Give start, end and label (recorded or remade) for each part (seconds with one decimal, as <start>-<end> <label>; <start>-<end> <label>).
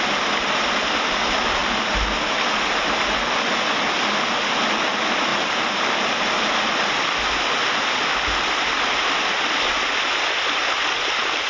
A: 0.0-11.5 recorded